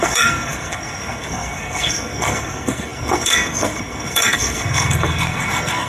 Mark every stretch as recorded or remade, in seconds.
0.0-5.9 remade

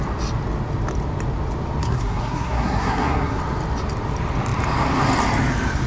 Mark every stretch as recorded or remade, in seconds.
0.0-1.8 recorded; 1.8-3.4 remade; 3.4-5.9 recorded

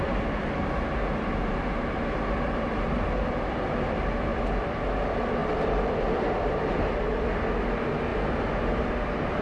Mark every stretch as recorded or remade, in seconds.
0.0-4.3 recorded; 4.3-4.8 remade; 4.8-5.4 recorded; 5.4-6.2 remade; 6.2-9.4 recorded

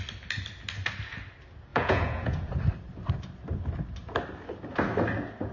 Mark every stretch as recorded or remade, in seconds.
0.0-1.7 recorded; 1.7-2.6 remade; 2.6-5.5 recorded

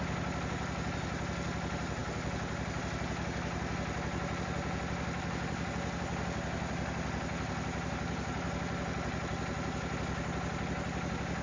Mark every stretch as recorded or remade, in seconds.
0.0-11.4 recorded